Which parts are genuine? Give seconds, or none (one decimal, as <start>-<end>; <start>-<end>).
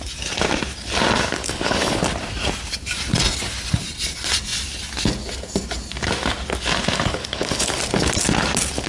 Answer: 0.0-1.4; 2.0-7.1; 7.8-8.9